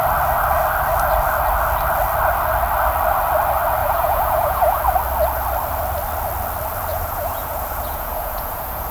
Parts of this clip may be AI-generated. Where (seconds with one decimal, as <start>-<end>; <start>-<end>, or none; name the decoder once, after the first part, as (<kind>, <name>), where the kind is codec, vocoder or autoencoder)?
3.8-4.8 (vocoder, Vocos); 6.9-8.9

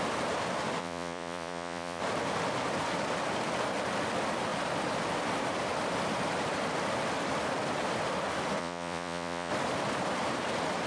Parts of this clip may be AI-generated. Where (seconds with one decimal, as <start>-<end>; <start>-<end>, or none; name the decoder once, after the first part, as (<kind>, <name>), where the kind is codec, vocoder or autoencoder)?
0.8-2.0 (vocoder, Vocos); 8.6-9.5